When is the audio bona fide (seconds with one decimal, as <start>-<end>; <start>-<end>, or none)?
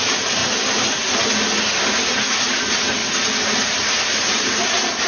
0.0-5.1